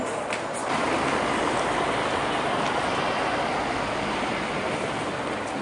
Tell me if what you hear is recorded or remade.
recorded